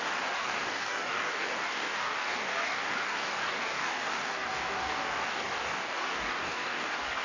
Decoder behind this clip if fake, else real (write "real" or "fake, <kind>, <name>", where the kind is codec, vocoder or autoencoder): fake, codec, DAC